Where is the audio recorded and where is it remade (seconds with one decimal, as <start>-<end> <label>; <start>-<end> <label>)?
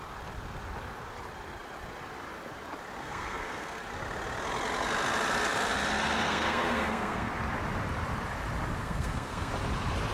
0.0-3.0 recorded; 3.0-3.8 remade; 3.8-6.2 recorded; 6.2-7.3 remade; 7.3-8.8 recorded; 8.8-9.5 remade; 9.5-10.1 recorded